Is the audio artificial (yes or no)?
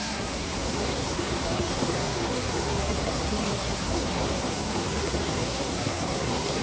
yes